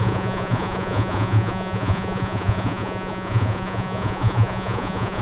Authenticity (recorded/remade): remade